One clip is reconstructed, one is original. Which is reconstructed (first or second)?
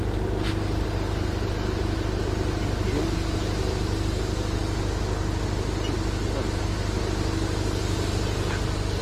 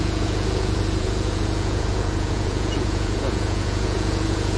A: second